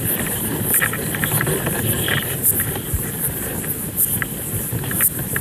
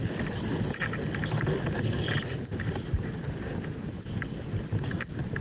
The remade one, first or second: first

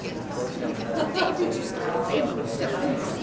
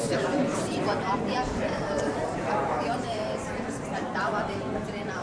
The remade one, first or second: second